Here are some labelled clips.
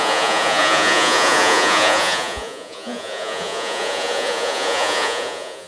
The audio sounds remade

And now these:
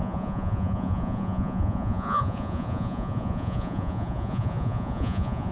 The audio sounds remade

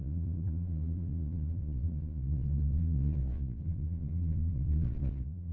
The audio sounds remade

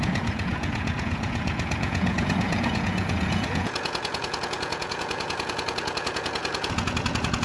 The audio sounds remade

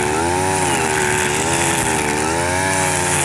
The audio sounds recorded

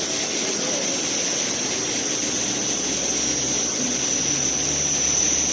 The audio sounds recorded